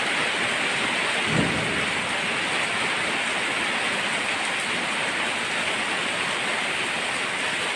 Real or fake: real